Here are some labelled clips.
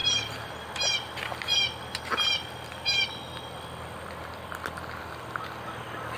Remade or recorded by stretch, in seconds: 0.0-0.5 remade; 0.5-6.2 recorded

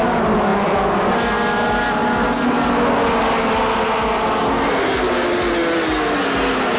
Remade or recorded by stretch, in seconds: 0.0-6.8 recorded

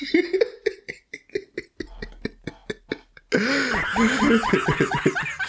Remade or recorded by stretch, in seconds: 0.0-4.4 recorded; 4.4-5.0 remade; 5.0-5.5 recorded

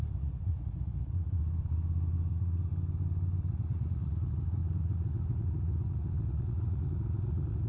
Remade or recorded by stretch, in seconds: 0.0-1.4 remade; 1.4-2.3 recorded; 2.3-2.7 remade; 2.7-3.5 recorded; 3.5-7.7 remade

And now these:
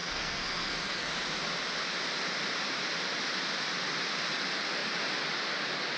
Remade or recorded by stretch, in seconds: 0.0-1.1 remade; 1.1-6.0 recorded

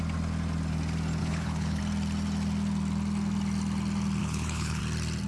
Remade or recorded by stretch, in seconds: 0.0-1.2 recorded; 1.2-1.8 remade; 1.8-4.2 recorded; 4.2-4.8 remade; 4.8-5.3 recorded

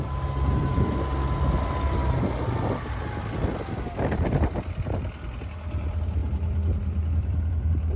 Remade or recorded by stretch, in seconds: 0.0-6.2 recorded; 6.2-7.5 remade; 7.5-8.0 recorded

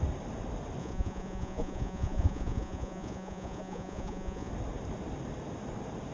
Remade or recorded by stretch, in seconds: 0.0-0.8 recorded; 0.8-4.5 remade; 4.5-6.1 recorded